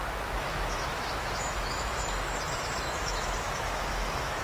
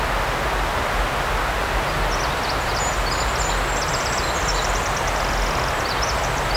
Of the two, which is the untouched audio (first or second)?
second